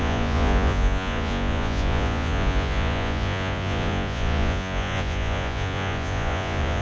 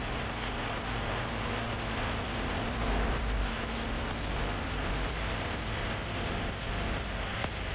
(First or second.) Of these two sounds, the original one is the second